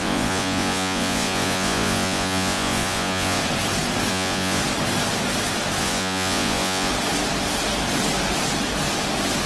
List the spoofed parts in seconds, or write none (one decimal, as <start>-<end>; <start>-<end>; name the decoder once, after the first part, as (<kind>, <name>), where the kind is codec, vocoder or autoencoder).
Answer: 0.0-3.4 (vocoder, Vocos); 4.1-4.6; 5.8-6.9